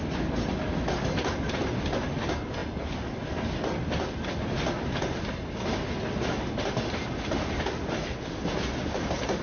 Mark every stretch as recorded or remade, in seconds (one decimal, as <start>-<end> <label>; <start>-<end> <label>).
0.0-9.4 recorded